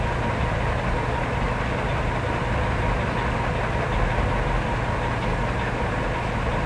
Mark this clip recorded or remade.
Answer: recorded